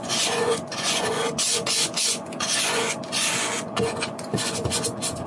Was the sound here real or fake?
fake